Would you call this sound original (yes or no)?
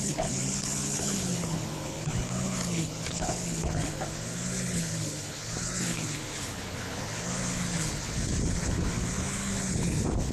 no